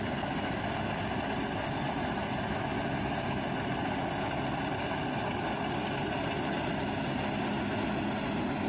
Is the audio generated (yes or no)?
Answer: no